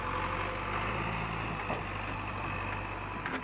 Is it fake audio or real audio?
real